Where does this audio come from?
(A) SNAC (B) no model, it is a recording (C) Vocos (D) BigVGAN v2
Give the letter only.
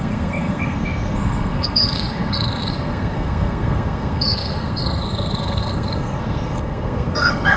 A